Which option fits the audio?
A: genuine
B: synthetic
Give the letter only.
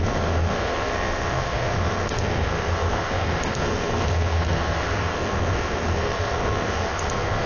B